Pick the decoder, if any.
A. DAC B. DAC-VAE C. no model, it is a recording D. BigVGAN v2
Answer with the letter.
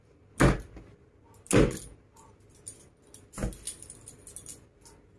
C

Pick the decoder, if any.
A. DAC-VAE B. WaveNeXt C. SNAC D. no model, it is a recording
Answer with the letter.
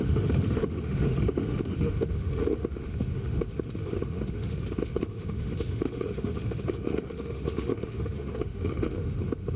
A